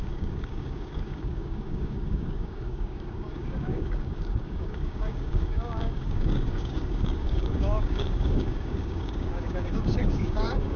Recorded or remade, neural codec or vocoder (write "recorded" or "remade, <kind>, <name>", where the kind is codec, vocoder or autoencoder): remade, codec, DAC